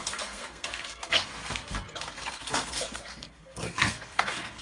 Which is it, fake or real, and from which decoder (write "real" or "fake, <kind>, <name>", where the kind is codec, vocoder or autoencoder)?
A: fake, codec, SNAC